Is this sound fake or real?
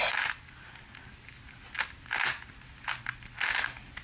real